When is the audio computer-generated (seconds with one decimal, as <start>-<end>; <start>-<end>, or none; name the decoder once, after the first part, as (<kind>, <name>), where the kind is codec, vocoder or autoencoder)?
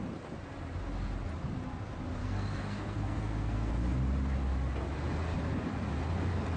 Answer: 2.2-3.8 (codec, SNAC)